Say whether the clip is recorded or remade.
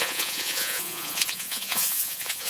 remade